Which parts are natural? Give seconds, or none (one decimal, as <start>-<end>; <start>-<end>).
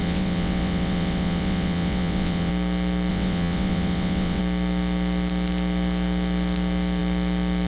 2.5-3.1; 4.4-7.7